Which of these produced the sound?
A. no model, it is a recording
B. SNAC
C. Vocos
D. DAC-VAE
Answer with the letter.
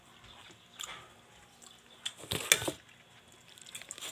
A